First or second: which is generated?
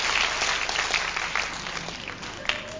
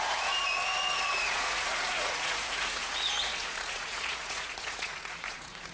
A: second